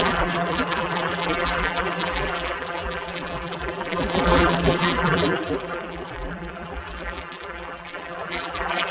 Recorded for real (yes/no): no